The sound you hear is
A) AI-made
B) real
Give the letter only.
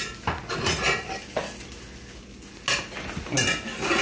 B